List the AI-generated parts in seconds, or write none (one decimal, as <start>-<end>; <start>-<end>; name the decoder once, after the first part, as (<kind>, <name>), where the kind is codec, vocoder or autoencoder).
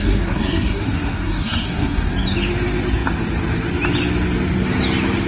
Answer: 0.0-2.1 (codec, SNAC)